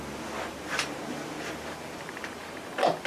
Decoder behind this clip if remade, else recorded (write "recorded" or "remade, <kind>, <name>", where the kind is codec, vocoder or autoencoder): recorded